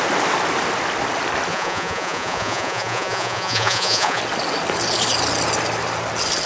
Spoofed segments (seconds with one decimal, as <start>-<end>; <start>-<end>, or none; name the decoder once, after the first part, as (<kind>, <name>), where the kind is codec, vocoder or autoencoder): 1.5-4.2 (vocoder, Vocos)